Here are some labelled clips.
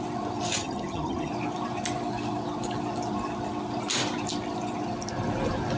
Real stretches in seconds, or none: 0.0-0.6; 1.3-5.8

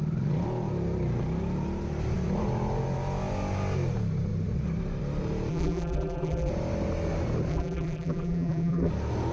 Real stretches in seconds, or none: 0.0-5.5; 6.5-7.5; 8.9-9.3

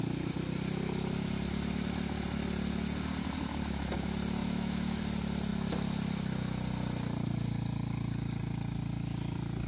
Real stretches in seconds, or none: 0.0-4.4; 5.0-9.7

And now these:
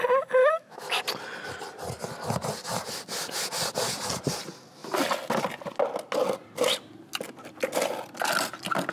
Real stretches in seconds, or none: 0.0-0.4; 1.0-8.9

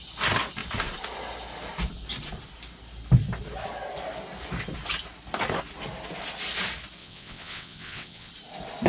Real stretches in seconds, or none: 0.0-7.0; 8.3-8.9

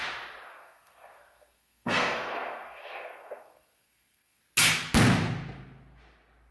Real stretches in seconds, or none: 0.0-0.5; 4.4-6.5